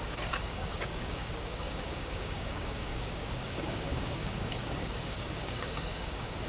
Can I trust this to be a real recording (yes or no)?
no